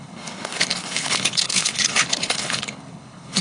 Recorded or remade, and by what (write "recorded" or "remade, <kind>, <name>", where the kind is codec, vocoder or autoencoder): remade, codec, HILCodec